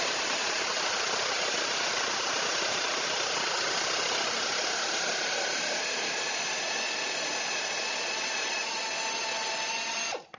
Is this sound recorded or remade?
recorded